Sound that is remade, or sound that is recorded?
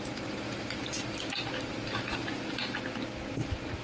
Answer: recorded